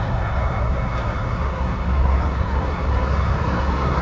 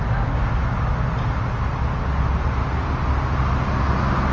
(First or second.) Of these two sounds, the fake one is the first